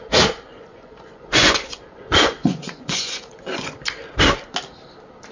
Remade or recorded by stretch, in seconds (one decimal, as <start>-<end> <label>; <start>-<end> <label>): 0.0-0.5 recorded; 0.5-3.7 remade; 3.7-5.3 recorded

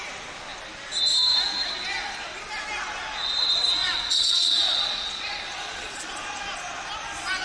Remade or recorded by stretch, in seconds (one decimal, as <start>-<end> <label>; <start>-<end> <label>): 0.0-3.8 recorded; 3.8-6.1 remade; 6.1-7.4 recorded

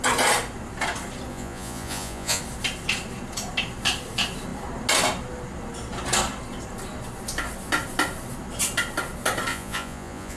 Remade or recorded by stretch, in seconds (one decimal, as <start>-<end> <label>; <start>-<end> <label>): 0.0-1.3 recorded; 1.3-2.4 remade; 2.4-9.5 recorded; 9.5-10.4 remade

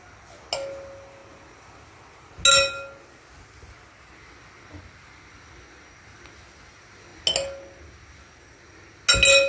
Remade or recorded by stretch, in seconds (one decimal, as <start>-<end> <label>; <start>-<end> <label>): 0.0-9.5 recorded

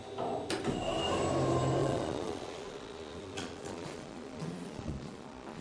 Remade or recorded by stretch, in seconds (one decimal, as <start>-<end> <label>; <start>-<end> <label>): 0.0-1.8 recorded; 1.8-5.6 remade

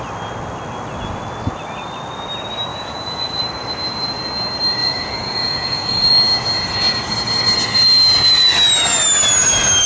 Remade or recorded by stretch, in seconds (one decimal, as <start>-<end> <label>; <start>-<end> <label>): 0.0-2.7 recorded; 2.7-3.4 remade; 3.4-4.8 recorded; 4.8-6.1 remade; 6.1-9.9 recorded

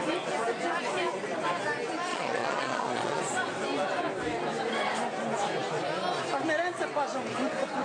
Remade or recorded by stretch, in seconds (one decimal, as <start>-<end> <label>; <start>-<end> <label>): 0.0-2.1 recorded; 2.1-3.2 remade; 3.2-7.8 recorded